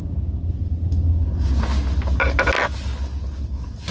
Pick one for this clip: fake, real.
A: real